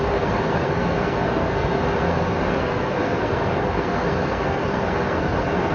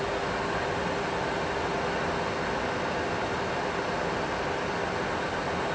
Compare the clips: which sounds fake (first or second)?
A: first